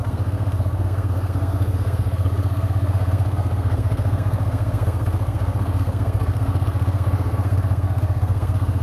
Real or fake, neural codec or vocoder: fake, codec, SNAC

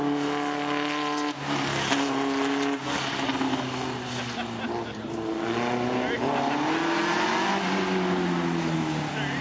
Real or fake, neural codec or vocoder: real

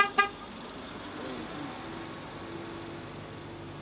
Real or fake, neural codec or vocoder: real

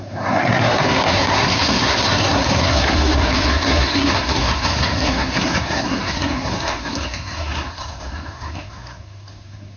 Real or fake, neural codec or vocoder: fake, codec, SNAC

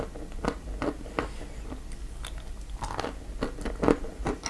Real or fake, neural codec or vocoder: real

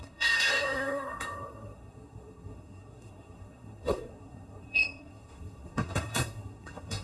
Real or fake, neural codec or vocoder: fake, codec, SNAC